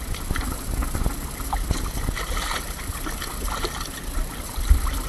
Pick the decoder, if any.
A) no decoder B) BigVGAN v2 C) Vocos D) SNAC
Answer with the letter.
A